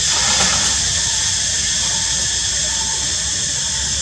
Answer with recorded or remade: recorded